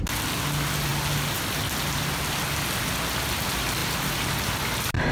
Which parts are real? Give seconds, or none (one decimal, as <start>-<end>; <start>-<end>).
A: 0.0-5.1